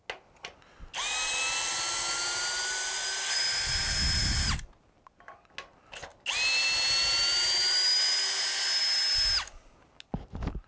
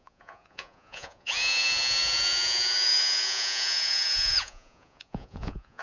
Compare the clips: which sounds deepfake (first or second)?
second